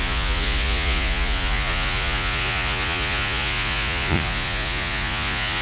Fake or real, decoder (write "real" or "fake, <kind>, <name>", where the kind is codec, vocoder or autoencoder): fake, vocoder, Vocos